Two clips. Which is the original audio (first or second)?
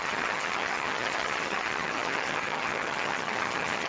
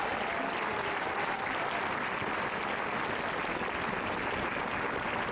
second